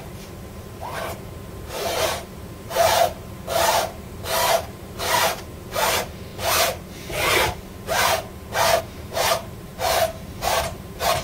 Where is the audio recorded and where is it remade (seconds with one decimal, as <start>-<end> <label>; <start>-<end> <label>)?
0.0-6.3 remade; 6.3-8.8 recorded; 8.8-9.7 remade; 9.7-10.3 recorded; 10.3-11.2 remade